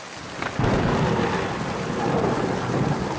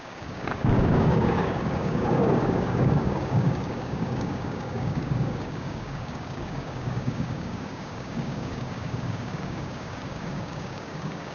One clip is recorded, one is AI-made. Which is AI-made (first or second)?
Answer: second